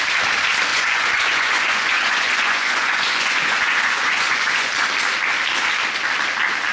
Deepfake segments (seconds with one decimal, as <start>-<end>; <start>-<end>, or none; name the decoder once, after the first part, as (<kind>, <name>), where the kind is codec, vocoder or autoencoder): 0.7-4.7 (vocoder, Vocos)